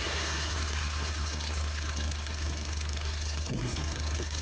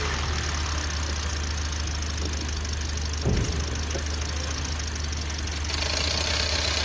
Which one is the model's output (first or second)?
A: first